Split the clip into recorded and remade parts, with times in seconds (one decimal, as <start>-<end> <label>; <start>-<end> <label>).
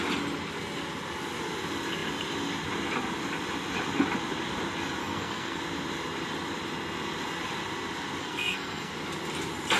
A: 0.0-5.0 recorded; 5.0-5.6 remade; 5.6-8.2 recorded; 8.2-8.9 remade; 8.9-9.8 recorded